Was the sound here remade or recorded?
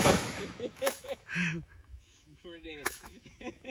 remade